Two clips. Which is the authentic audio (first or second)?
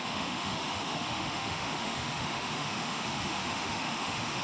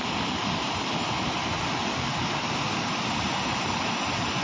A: second